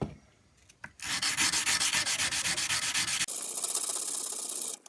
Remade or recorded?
recorded